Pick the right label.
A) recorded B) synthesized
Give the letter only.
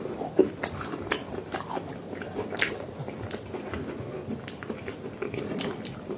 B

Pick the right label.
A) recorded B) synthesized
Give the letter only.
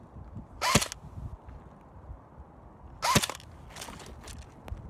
A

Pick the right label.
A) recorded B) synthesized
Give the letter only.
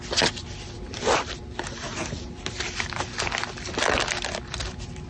B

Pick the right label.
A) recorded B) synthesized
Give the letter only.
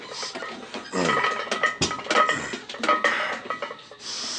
A